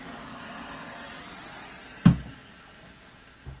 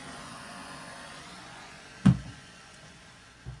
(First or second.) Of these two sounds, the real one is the first